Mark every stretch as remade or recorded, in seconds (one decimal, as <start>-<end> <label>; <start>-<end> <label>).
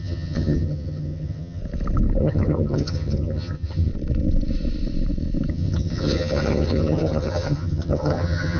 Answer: 0.0-1.6 remade; 1.6-2.2 recorded; 2.2-3.9 remade; 3.9-5.5 recorded; 5.5-8.6 remade